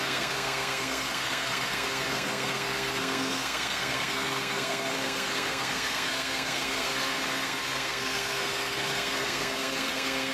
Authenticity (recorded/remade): remade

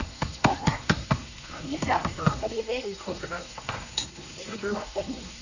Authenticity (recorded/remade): remade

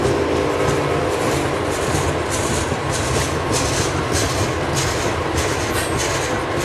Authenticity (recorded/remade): recorded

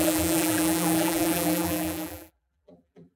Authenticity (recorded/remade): remade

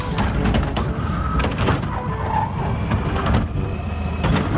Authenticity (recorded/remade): recorded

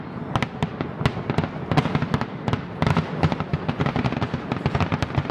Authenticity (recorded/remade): recorded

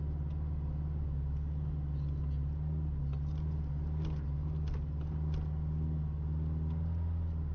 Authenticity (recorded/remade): recorded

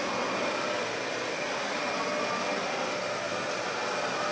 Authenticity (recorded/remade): recorded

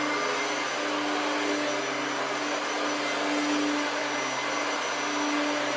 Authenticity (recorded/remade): recorded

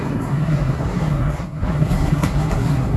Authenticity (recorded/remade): remade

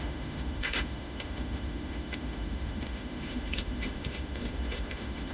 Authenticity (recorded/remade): remade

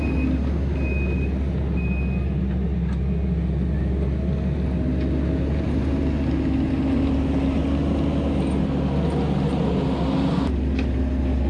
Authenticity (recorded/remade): recorded